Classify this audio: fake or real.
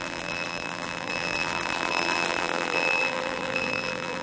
fake